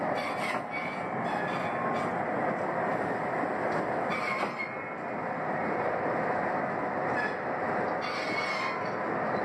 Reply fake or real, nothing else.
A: real